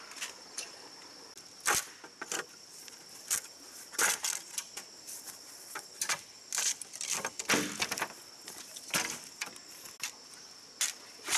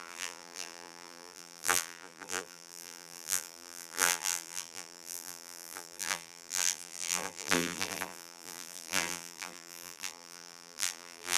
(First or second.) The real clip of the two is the first